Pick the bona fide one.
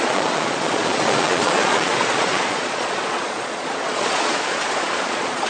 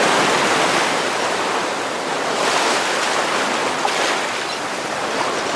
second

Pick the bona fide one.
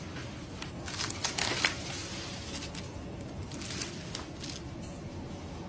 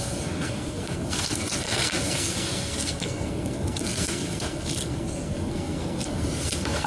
first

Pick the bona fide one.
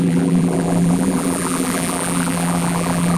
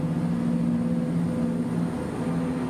second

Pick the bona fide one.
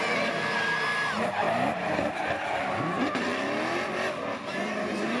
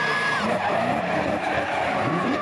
first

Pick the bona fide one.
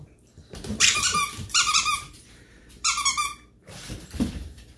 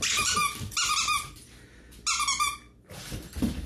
second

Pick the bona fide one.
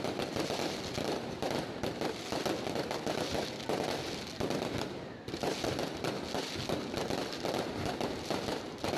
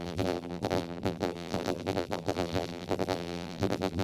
first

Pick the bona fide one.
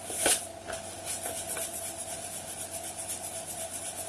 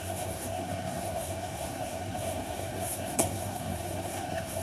first